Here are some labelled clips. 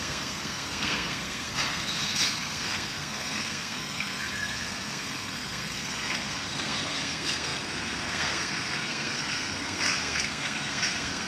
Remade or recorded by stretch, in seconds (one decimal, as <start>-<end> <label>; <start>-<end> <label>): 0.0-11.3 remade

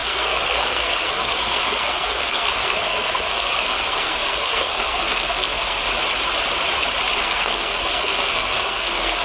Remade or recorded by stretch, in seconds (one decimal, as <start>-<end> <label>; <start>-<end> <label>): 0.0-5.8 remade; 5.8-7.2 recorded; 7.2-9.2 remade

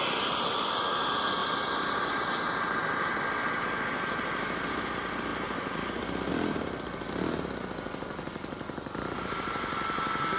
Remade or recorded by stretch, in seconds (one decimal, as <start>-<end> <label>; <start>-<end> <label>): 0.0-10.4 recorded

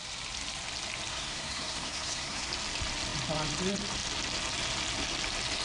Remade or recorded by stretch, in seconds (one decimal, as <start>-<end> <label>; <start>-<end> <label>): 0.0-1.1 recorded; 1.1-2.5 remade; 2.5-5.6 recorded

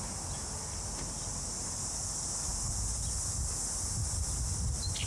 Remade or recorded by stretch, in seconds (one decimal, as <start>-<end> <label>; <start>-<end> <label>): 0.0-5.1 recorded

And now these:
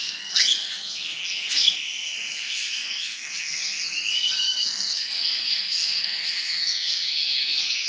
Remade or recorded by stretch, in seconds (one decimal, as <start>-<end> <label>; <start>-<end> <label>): 0.0-7.9 remade

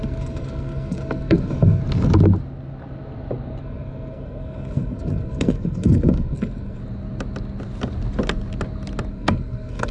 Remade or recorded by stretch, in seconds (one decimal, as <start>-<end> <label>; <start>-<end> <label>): 0.0-1.8 remade; 1.8-3.6 recorded; 3.6-6.8 remade; 6.8-9.1 recorded; 9.1-9.9 remade